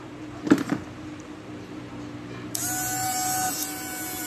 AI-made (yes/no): yes